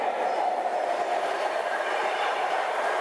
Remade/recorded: recorded